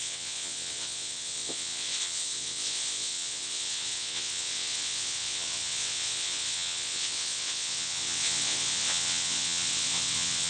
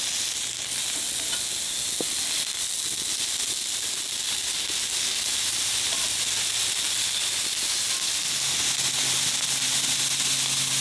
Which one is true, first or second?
second